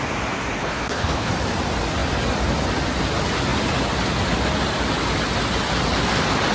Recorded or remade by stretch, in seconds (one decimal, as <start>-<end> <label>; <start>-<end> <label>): 0.0-0.6 recorded; 0.6-1.3 remade; 1.3-6.5 recorded